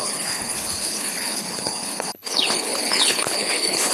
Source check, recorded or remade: remade